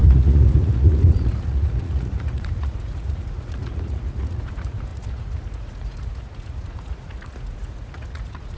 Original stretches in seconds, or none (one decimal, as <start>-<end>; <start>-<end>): none